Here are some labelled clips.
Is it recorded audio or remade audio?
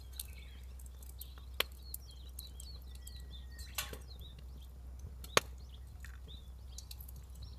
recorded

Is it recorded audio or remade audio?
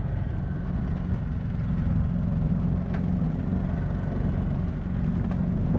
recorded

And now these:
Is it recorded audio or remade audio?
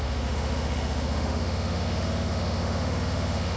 remade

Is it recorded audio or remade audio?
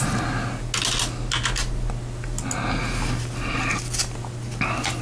recorded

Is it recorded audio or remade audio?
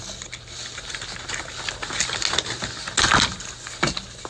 recorded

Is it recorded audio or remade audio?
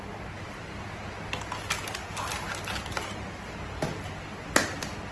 recorded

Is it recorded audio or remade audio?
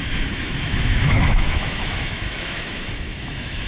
remade